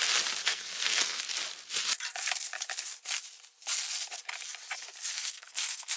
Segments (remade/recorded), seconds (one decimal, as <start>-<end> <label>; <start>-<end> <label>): 0.0-0.4 recorded; 0.4-1.2 remade; 1.2-5.1 recorded; 5.1-6.0 remade